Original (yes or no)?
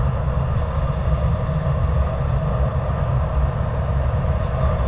yes